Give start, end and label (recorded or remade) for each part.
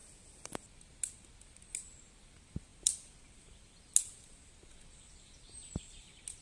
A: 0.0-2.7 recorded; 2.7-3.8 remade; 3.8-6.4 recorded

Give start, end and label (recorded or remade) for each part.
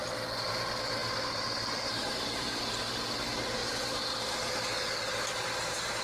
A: 0.0-1.0 recorded; 1.0-2.6 remade; 2.6-3.6 recorded; 3.6-4.5 remade; 4.5-6.0 recorded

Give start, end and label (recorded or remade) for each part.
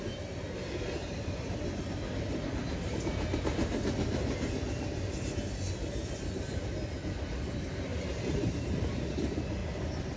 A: 0.0-7.9 recorded; 7.9-9.1 remade; 9.1-10.2 recorded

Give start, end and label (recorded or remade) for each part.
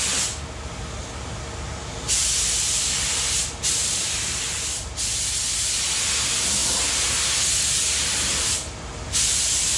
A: 0.0-9.8 recorded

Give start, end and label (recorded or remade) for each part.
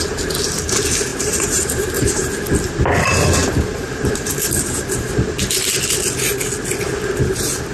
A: 0.0-1.1 recorded; 1.1-2.2 remade; 2.2-3.4 recorded; 3.4-5.2 remade; 5.2-7.7 recorded